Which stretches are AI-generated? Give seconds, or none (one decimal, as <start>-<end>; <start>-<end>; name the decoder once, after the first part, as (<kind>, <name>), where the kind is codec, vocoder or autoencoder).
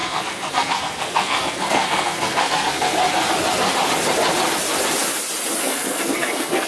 0.0-3.0 (codec, SNAC); 5.6-6.7